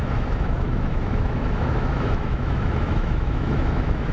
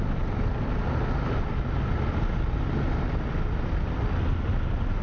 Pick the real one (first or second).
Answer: second